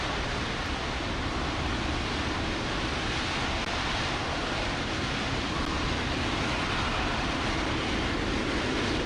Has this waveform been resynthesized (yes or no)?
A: no